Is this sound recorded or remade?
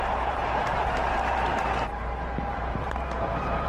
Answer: remade